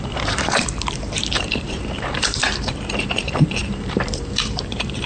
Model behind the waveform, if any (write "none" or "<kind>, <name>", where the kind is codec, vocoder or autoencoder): vocoder, BigVGAN v2